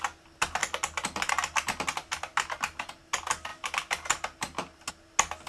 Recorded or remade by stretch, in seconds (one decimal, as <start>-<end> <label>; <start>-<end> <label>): 0.0-5.5 recorded